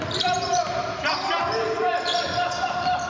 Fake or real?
fake